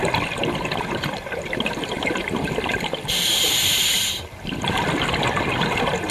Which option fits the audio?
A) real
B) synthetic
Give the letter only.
A